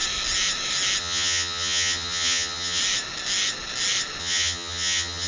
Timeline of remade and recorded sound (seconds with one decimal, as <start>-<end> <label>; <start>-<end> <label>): 0.0-1.0 recorded; 1.0-2.8 remade; 2.8-4.2 recorded; 4.2-5.3 remade